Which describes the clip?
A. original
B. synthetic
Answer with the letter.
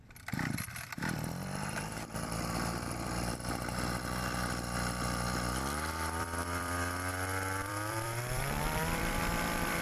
B